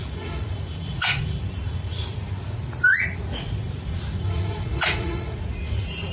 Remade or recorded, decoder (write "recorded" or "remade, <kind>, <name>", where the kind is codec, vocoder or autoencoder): remade, vocoder, Vocos